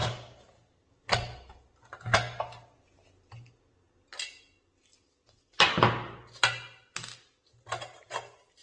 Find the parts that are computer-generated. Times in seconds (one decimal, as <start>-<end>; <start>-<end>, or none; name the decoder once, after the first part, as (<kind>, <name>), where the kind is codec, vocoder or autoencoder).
none